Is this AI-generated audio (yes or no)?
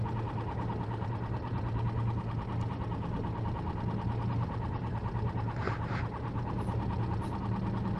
no